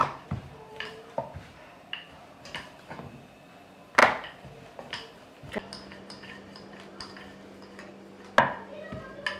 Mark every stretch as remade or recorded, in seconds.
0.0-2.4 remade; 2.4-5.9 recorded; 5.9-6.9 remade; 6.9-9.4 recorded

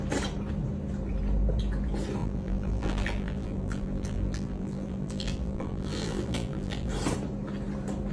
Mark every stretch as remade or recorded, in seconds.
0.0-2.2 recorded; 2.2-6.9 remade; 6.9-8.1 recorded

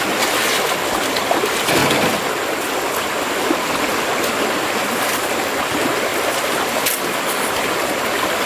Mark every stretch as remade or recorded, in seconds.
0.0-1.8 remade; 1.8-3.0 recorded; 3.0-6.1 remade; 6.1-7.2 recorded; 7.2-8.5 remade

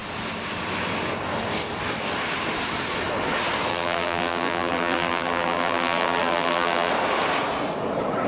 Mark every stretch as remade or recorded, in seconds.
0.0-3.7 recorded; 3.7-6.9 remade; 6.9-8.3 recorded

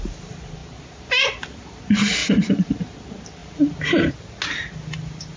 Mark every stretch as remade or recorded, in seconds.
0.0-2.2 recorded; 2.2-2.9 remade; 2.9-3.4 recorded; 3.4-4.1 remade; 4.1-5.4 recorded

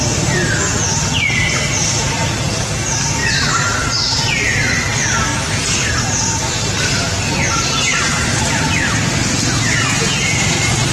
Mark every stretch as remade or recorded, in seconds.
0.0-3.2 recorded; 3.2-4.2 remade; 4.2-7.9 recorded; 7.9-9.3 remade; 9.3-10.9 recorded

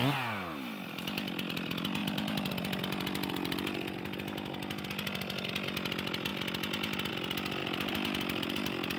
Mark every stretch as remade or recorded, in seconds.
0.0-2.0 recorded; 2.0-2.5 remade; 2.5-6.3 recorded; 6.3-7.1 remade; 7.1-7.6 recorded; 7.6-8.5 remade; 8.5-9.0 recorded

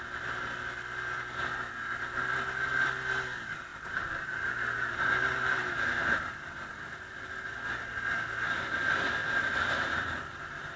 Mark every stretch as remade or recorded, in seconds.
0.0-3.7 recorded; 3.7-6.3 remade; 6.3-9.2 recorded; 9.2-10.1 remade; 10.1-10.8 recorded